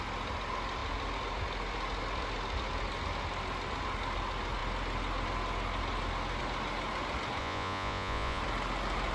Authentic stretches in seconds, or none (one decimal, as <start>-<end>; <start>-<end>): 0.0-7.4; 8.4-9.1